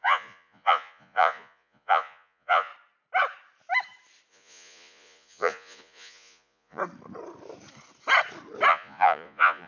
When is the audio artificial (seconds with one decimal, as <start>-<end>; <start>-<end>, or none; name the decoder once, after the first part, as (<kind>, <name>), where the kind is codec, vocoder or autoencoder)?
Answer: 0.0-2.7 (vocoder, Vocos); 4.3-6.8; 8.7-9.7